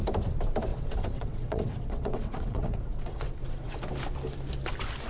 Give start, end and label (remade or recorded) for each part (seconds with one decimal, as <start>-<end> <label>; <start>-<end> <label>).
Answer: 0.0-0.7 recorded; 0.7-3.8 remade; 3.8-5.1 recorded